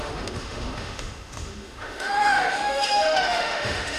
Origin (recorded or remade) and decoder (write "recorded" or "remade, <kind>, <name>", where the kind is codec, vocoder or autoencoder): remade, autoencoder, DAC-VAE